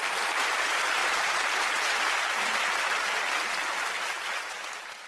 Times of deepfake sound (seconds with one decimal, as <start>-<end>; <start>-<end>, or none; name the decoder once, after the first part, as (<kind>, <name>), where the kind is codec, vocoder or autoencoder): 0.0-1.0 (vocoder, BigVGAN v2); 4.1-5.1